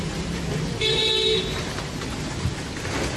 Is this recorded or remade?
recorded